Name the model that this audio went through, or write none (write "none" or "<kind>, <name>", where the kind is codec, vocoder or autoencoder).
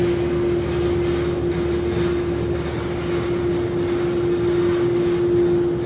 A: none